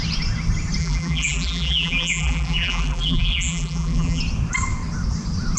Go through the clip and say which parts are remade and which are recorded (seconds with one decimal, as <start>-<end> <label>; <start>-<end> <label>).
0.0-0.8 recorded; 0.8-4.2 remade; 4.2-5.6 recorded